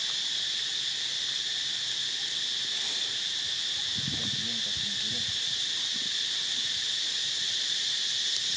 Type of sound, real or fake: real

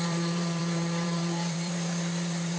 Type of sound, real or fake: fake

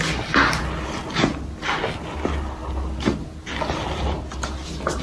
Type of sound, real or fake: real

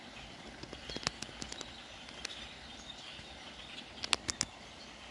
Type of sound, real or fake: real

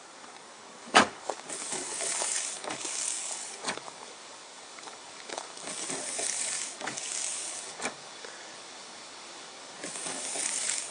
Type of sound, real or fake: fake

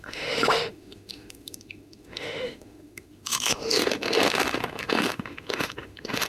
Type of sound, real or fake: fake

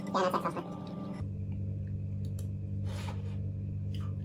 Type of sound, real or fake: real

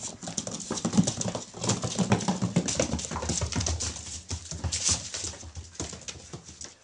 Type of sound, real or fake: real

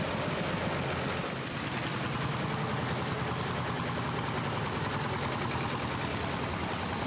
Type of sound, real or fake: real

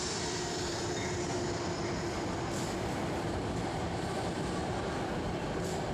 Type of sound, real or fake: fake